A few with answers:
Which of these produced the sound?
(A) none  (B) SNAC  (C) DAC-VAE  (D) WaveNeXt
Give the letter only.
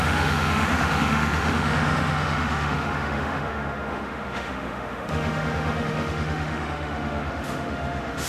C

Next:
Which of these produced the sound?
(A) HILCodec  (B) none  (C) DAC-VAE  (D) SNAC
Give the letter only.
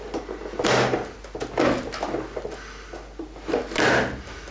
B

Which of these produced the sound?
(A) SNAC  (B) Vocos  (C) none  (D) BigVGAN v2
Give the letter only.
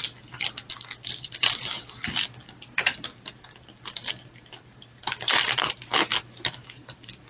C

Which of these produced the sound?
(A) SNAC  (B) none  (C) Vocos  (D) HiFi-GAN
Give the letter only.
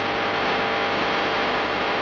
B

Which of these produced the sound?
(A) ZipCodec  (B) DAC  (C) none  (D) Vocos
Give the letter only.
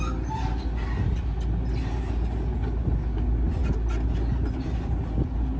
C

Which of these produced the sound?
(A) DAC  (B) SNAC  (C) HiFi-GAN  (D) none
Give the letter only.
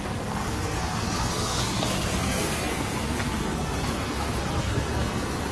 B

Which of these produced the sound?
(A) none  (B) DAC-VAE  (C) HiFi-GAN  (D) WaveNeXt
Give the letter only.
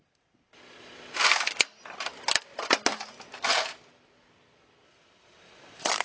A